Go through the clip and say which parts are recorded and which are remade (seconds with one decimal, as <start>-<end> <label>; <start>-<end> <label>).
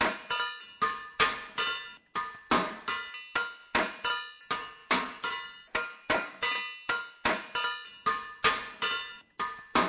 0.0-9.9 recorded